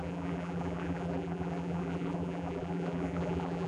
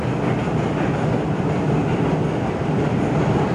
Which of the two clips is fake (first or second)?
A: first